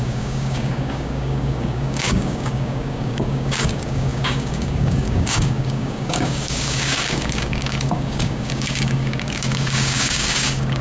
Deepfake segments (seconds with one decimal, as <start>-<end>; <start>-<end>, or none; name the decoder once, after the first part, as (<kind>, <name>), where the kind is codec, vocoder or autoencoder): 0.0-10.8 (codec, DAC)